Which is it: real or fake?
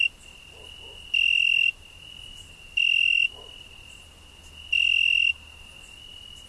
real